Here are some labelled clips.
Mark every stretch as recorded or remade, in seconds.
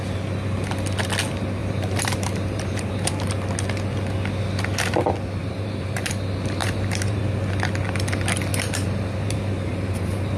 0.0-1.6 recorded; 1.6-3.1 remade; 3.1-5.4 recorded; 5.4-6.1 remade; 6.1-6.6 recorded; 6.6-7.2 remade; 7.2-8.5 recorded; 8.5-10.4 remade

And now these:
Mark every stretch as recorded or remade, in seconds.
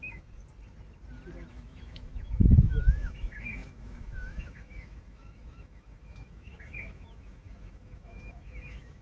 0.0-0.4 remade; 0.4-1.5 recorded; 1.5-9.0 remade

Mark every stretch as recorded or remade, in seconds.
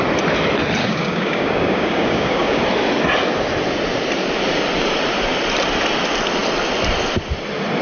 0.0-0.8 recorded; 0.8-2.6 remade; 2.6-7.8 recorded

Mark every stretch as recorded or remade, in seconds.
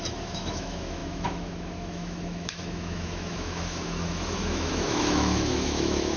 0.0-6.2 remade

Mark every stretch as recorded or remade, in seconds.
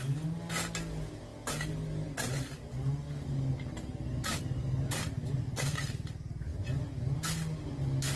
0.0-8.2 recorded